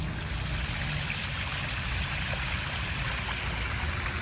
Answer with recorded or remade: recorded